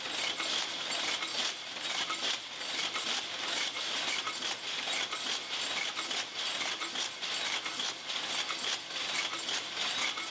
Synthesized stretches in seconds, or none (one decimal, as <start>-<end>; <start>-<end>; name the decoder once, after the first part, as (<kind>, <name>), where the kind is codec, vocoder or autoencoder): 1.3-3.2 (vocoder, BigVGAN v2)

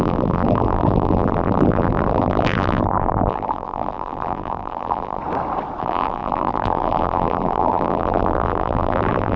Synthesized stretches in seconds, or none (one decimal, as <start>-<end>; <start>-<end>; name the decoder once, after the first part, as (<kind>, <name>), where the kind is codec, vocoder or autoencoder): 0.0-5.2 (vocoder, BigVGAN v2); 5.8-9.4